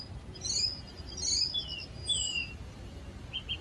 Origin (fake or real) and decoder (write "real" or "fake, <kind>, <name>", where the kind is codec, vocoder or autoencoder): real